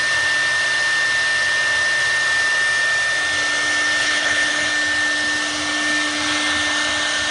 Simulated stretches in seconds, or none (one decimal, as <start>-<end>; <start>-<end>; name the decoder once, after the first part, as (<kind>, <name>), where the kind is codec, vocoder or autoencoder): 4.0-4.7 (codec, HILCodec)